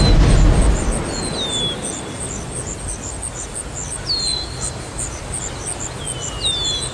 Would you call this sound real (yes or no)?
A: yes